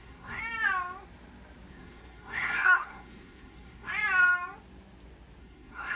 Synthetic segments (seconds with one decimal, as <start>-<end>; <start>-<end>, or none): 0.0-0.4; 1.7-3.9; 5.4-6.0